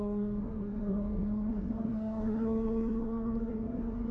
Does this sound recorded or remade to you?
remade